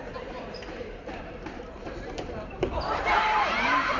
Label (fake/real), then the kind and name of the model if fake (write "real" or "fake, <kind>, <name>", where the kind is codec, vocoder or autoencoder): fake, vocoder, BigVGAN v2